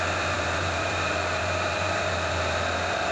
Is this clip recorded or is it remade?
remade